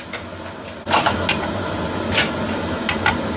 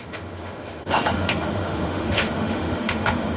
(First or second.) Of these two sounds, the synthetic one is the second